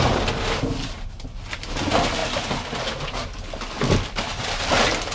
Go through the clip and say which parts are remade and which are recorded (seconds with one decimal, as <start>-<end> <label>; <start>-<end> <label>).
0.0-5.1 recorded